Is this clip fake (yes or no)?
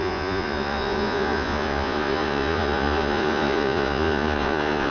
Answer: yes